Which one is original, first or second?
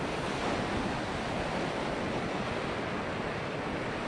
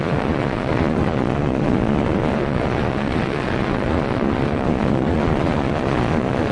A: first